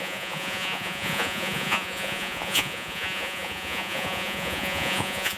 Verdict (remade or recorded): remade